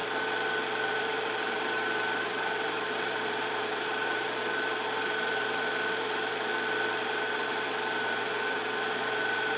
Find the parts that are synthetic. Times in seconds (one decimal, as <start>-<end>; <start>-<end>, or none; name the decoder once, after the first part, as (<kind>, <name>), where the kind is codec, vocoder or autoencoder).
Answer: 0.9-6.5 (vocoder, BigVGAN v2); 7.0-9.6